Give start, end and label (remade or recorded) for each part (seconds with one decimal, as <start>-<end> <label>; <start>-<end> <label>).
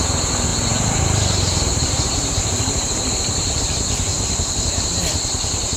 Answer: 0.0-0.5 recorded; 0.5-3.6 remade; 3.6-4.1 recorded; 4.1-5.0 remade; 5.0-5.8 recorded